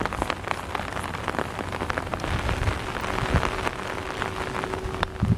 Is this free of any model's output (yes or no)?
yes